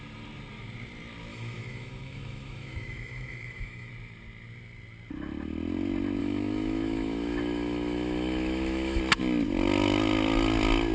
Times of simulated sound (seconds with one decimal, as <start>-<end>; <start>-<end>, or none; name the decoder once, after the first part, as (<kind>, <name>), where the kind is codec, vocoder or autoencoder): 1.3-3.9 (autoencoder, DAC-VAE); 6.2-9.0